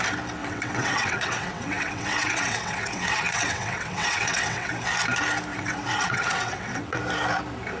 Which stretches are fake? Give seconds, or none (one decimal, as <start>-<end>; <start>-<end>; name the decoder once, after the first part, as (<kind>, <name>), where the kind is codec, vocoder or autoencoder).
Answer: 0.4-4.7 (vocoder, WaveNeXt); 5.5-7.0